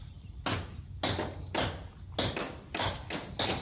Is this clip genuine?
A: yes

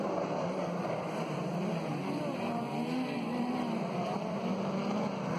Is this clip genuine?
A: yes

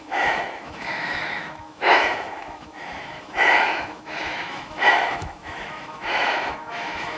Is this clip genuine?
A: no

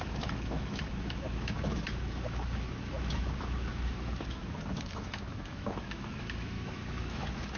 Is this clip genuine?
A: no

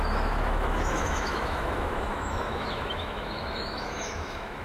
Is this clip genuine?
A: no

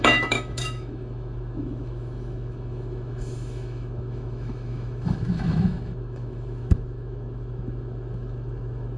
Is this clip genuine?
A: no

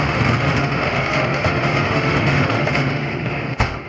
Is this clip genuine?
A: no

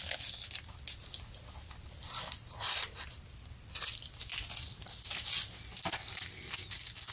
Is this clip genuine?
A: yes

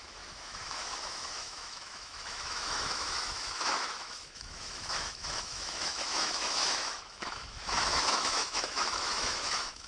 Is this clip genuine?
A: no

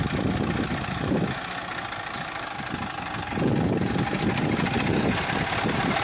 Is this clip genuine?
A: yes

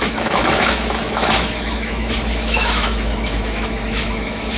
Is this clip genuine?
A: no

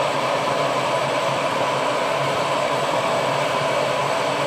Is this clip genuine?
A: yes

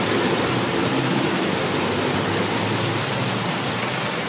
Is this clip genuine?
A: yes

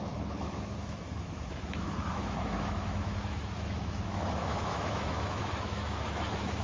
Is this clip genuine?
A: no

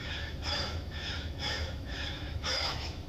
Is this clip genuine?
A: no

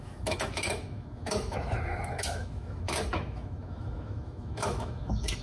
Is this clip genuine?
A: no